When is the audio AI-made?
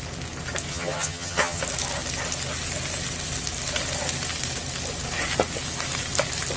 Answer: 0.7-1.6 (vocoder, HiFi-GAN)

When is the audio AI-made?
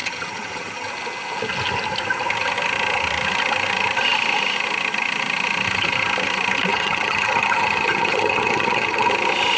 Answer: 0.0-0.9 (vocoder, HiFi-GAN); 6.7-9.1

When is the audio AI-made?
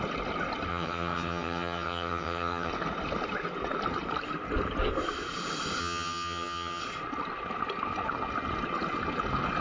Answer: 0.7-2.7 (vocoder, HiFi-GAN); 5.8-6.8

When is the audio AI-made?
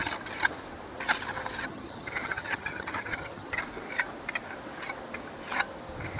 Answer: 1.6-3.6 (vocoder, HiFi-GAN)